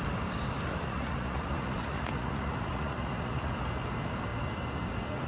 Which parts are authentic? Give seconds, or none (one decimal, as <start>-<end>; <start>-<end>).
0.0-0.7; 3.5-5.3